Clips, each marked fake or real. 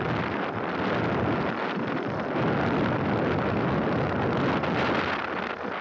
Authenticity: real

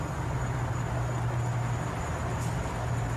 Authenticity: real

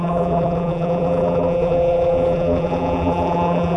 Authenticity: fake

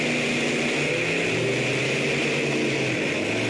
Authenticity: real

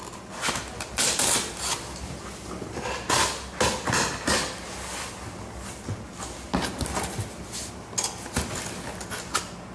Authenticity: real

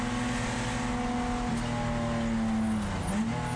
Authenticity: real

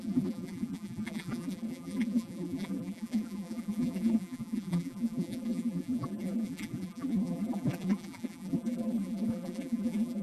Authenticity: fake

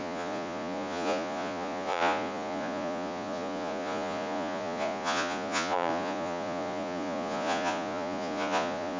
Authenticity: fake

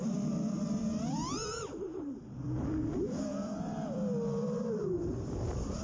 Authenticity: fake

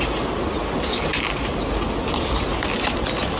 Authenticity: real